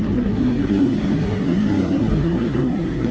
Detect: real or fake fake